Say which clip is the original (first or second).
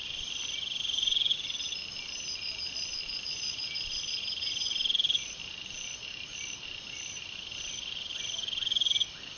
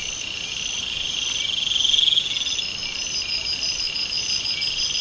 second